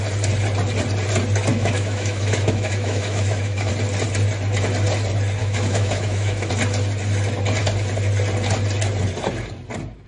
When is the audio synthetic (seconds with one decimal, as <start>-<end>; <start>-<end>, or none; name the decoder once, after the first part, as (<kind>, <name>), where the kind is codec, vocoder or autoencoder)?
1.5-3.7 (autoencoder, DAC-VAE); 5.4-6.5